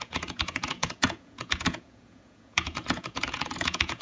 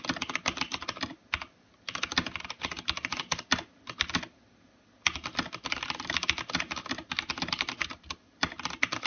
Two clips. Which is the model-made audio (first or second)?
first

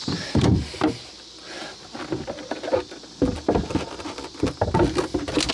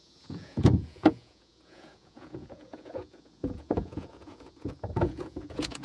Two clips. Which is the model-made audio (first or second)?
second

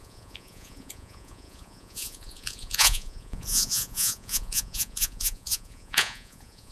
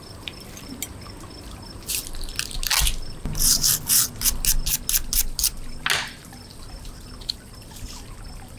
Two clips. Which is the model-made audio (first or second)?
first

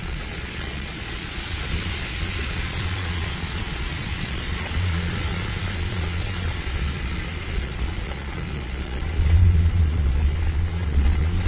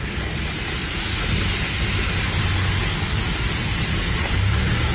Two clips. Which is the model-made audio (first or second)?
first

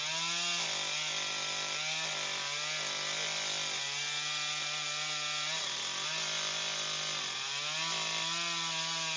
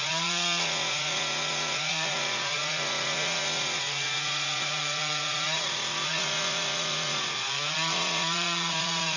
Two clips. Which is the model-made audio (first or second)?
second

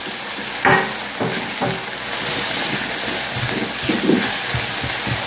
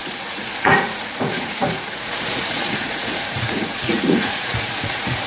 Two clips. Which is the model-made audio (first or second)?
second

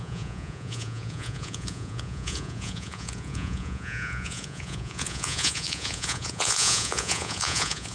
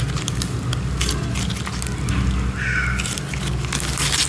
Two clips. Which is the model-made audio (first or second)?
first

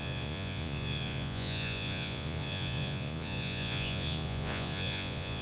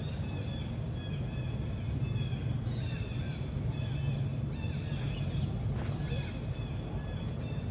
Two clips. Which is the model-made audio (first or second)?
first